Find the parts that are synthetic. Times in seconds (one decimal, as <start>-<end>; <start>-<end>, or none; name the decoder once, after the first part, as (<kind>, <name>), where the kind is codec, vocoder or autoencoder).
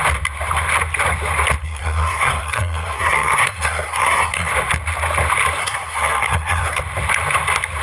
1.6-4.5 (codec, SNAC); 5.6-6.8